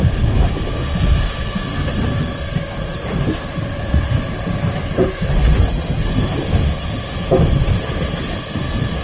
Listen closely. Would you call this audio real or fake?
real